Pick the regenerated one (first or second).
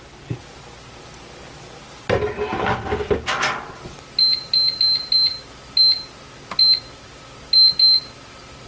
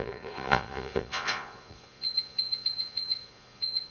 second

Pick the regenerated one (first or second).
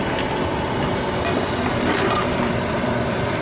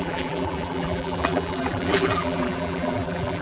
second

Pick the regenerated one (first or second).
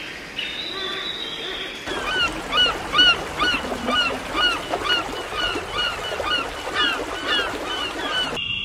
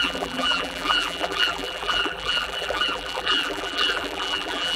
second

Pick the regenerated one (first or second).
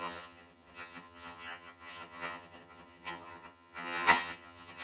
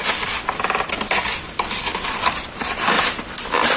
first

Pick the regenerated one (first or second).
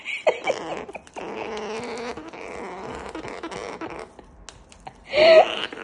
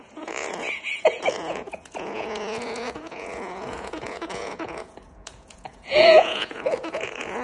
second